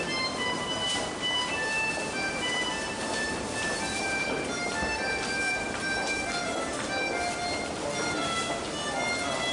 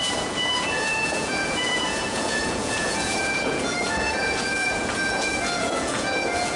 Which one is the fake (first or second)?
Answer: second